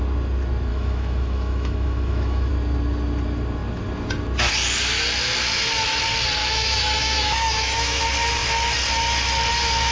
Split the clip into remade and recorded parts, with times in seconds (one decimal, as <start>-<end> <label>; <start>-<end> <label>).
0.0-0.7 recorded; 0.7-2.5 remade; 2.5-6.4 recorded; 6.4-8.0 remade; 8.0-9.9 recorded